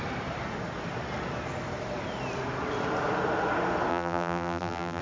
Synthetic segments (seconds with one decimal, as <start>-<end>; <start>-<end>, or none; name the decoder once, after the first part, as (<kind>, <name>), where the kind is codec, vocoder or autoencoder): 3.9-5.0 (vocoder, BigVGAN v2)